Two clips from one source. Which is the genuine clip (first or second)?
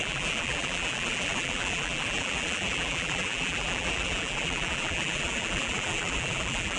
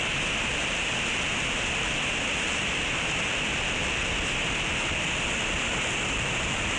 second